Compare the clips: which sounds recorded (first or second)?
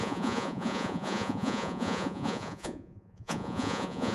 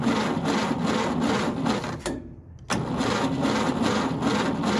second